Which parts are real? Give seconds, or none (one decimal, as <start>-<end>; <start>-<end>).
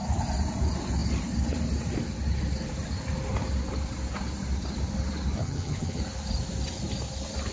0.0-5.4; 6.0-7.5